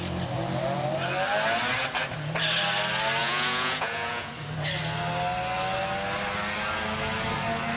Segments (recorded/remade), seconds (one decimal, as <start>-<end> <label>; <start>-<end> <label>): 0.0-3.2 recorded; 3.2-4.3 remade; 4.3-7.8 recorded